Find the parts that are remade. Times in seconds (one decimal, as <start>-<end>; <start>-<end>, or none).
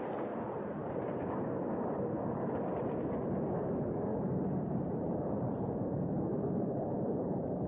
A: 0.8-1.5; 4.1-7.7